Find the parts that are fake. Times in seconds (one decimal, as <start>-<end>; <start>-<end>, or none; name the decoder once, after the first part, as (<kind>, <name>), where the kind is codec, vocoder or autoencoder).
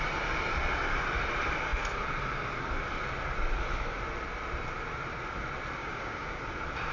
5.8-6.4 (codec, DAC)